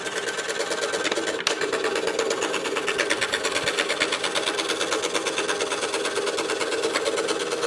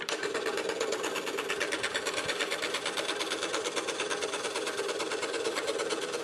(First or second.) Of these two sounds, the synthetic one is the second